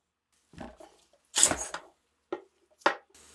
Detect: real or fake real